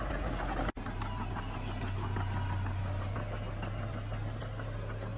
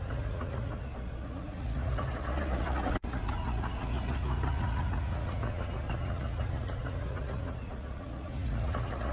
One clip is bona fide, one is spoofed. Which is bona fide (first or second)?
first